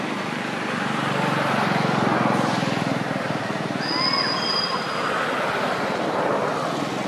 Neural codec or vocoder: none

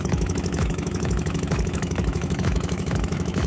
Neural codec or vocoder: autoencoder, DAC-VAE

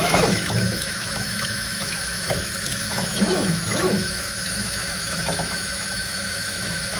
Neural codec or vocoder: autoencoder, DAC-VAE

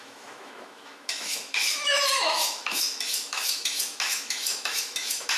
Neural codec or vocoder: autoencoder, DAC-VAE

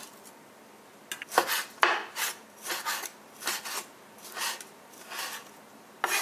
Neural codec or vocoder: none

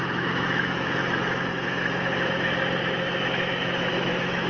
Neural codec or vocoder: autoencoder, DAC-VAE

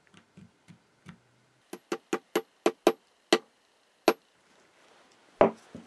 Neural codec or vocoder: none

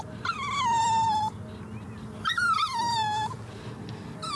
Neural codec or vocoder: none